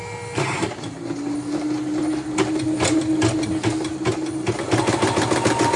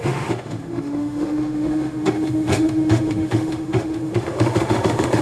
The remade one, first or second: second